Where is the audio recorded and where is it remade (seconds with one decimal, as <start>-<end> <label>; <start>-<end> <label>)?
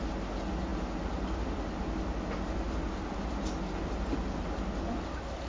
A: 0.0-5.5 recorded